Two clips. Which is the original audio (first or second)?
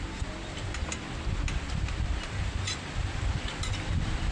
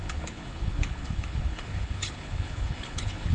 first